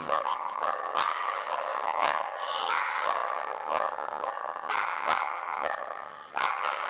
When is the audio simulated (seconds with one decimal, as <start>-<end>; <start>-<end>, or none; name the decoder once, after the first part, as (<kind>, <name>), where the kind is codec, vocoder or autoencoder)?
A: 0.0-6.9 (vocoder, HiFi-GAN)